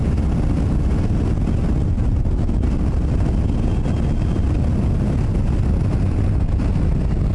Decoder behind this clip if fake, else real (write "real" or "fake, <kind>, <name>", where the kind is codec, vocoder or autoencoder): real